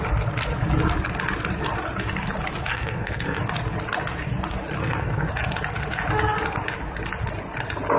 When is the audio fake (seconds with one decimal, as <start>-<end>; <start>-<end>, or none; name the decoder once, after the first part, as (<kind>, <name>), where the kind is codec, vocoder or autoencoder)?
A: 2.7-3.4 (codec, SNAC); 4.8-5.3